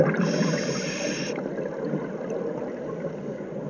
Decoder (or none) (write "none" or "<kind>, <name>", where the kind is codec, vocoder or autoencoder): none